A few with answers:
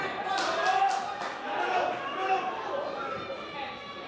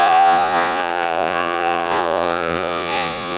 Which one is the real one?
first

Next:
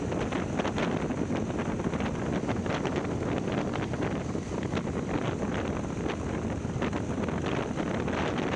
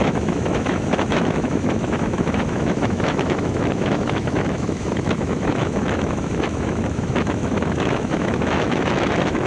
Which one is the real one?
first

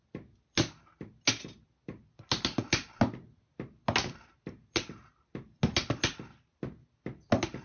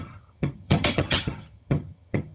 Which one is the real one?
first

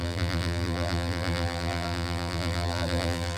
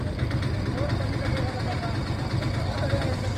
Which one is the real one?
second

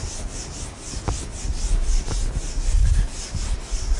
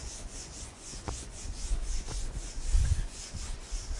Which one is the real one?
first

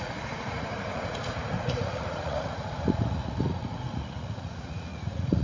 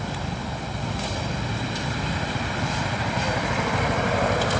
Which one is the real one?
second